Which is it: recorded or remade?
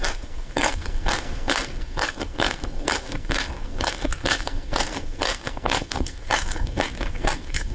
remade